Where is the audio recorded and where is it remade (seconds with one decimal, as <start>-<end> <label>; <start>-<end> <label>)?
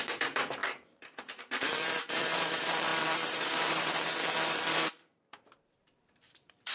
0.0-6.7 remade